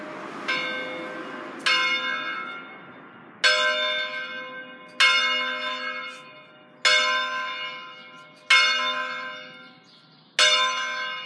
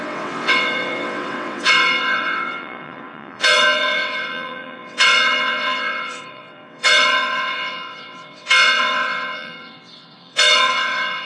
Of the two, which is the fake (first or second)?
second